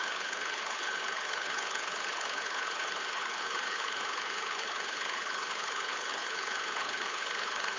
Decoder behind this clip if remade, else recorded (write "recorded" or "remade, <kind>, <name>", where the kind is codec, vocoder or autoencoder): remade, codec, HILCodec